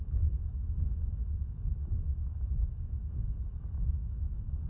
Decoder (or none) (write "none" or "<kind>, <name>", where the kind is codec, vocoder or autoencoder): autoencoder, DAC-VAE